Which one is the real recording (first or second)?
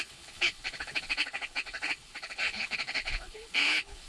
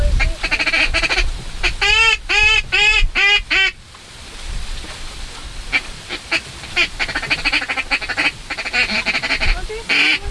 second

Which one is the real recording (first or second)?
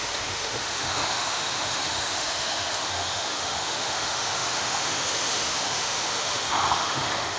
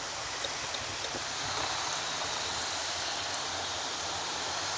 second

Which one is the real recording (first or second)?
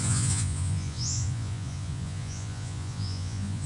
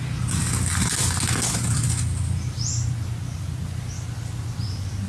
second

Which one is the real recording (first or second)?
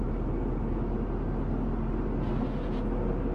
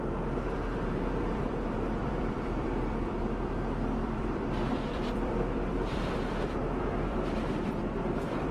first